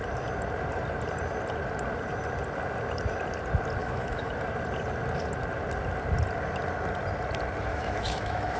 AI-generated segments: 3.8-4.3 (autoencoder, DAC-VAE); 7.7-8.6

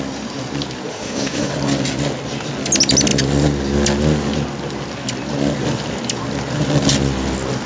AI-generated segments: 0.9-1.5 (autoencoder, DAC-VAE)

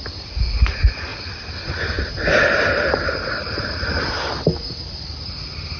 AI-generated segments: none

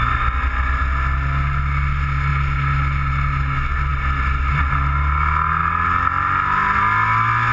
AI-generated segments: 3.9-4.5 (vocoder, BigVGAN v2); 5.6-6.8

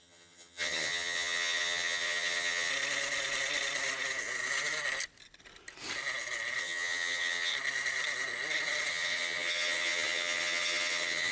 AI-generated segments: 0.0-2.7 (vocoder, HiFi-GAN); 6.6-7.5; 8.9-11.3

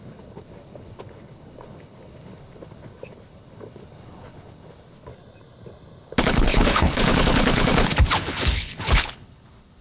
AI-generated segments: 0.0-5.1 (codec, HILCodec); 6.2-9.8

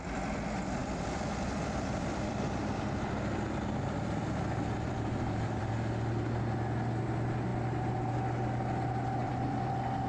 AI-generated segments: 0.8-5.7 (vocoder, BigVGAN v2); 9.2-9.7

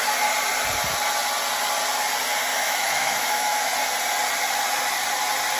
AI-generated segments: 2.5-3.7 (autoencoder, DAC-VAE)